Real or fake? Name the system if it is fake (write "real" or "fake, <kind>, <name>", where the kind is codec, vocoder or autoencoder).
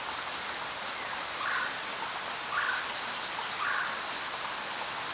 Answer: real